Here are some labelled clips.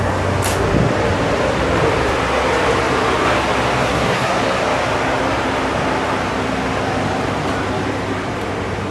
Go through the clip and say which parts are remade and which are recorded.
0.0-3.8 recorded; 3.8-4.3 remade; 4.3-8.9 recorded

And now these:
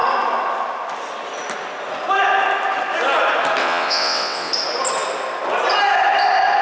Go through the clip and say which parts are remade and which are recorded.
0.0-3.6 recorded; 3.6-4.5 remade; 4.5-6.6 recorded